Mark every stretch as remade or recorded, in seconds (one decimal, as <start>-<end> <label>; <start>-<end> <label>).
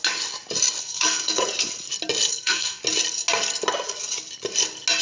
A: 0.0-0.8 recorded; 0.8-1.4 remade; 1.4-2.3 recorded; 2.3-2.8 remade; 2.8-5.0 recorded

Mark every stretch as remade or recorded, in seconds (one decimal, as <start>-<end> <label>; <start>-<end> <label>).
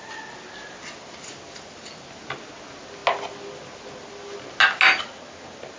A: 0.0-5.8 recorded